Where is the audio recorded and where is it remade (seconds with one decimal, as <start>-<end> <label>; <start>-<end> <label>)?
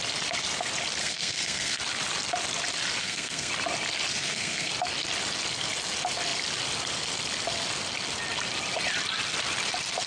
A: 0.0-1.0 recorded; 1.0-1.8 remade; 1.8-3.0 recorded; 3.0-3.5 remade; 3.5-4.1 recorded; 4.1-4.7 remade; 4.7-10.1 recorded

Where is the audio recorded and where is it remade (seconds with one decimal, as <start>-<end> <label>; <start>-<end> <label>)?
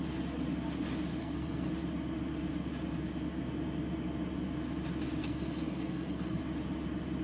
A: 0.0-1.2 recorded; 1.2-1.7 remade; 1.7-5.2 recorded; 5.2-6.4 remade; 6.4-7.2 recorded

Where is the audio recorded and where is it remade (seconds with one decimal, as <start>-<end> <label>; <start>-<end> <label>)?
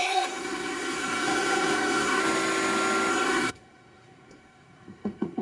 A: 0.0-2.2 remade; 2.2-3.1 recorded; 3.1-5.4 remade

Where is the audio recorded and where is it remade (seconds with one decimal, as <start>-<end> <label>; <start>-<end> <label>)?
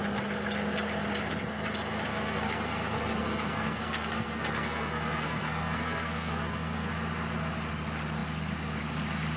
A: 0.0-2.1 recorded; 2.1-6.9 remade; 6.9-9.4 recorded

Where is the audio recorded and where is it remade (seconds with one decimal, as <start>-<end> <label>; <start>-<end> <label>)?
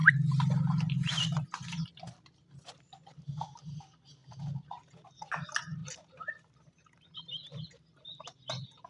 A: 0.0-8.9 recorded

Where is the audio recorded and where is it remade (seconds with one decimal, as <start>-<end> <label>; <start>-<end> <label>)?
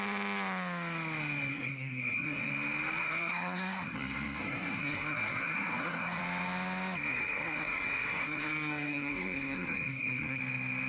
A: 0.0-1.5 recorded; 1.5-2.5 remade; 2.5-3.0 recorded; 3.0-6.2 remade; 6.2-7.1 recorded; 7.1-10.4 remade; 10.4-10.9 recorded